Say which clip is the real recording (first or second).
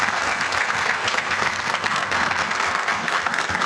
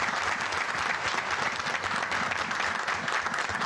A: second